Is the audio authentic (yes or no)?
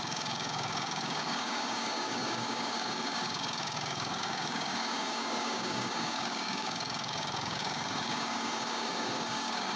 no